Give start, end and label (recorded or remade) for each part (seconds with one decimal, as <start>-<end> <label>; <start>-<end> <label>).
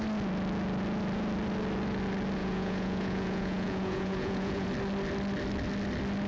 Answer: 0.0-2.4 recorded; 2.4-4.7 remade; 4.7-6.3 recorded